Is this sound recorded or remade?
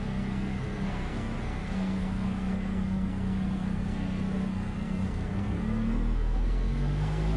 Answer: remade